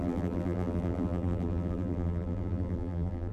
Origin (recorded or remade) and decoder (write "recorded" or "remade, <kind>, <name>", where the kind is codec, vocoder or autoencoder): remade, vocoder, BigVGAN v2